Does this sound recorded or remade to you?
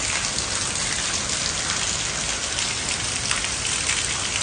recorded